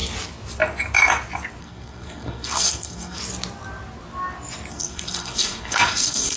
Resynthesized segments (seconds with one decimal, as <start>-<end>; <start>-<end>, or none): 1.6-3.2; 4.7-6.4